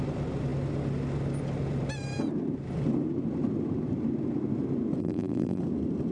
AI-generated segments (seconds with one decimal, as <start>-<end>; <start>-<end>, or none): 5.0-5.6